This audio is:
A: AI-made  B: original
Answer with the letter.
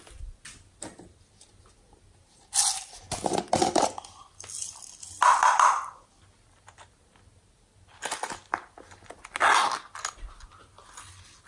B